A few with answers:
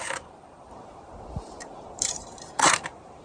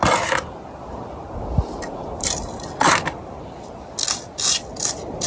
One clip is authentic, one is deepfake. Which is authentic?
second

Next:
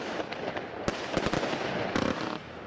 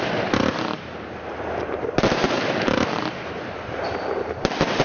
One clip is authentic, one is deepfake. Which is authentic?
first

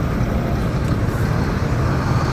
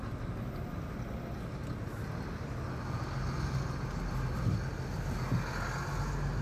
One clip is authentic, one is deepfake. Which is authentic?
second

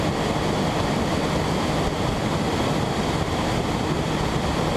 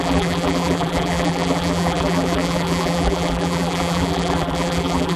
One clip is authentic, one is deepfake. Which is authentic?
first